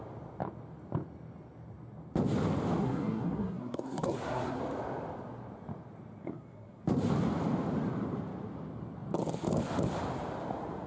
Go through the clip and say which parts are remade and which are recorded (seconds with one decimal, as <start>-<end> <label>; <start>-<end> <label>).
0.0-2.8 recorded; 2.8-4.6 remade; 4.6-6.2 recorded; 6.2-6.8 remade; 6.8-10.9 recorded